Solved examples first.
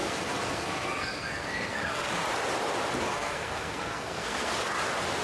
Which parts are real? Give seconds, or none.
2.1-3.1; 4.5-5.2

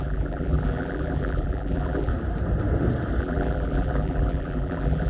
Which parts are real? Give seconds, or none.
2.1-3.2

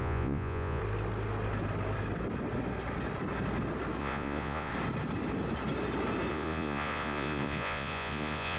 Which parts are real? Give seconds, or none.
0.8-4.0; 4.7-6.3

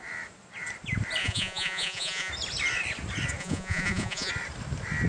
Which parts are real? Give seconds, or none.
0.0-1.2; 2.3-3.4; 4.3-5.1

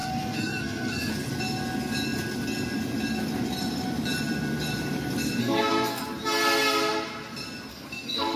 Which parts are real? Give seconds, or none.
1.1-5.4; 6.0-7.7

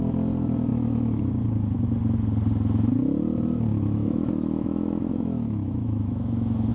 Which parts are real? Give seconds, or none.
0.0-0.7; 1.2-3.7

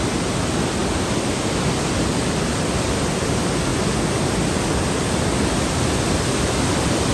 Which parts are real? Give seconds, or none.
0.0-7.1